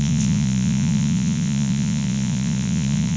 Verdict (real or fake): fake